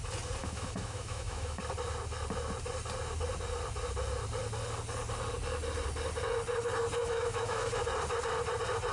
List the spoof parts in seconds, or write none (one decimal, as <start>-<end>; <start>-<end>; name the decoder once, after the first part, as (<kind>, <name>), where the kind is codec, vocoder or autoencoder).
0.4-1.6 (autoencoder, DAC-VAE); 7.0-7.7